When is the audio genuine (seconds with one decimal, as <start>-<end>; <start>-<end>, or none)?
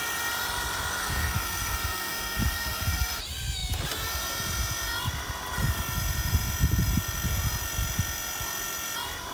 0.0-0.9; 3.2-9.3